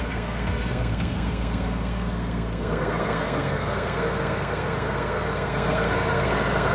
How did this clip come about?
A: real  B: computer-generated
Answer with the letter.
B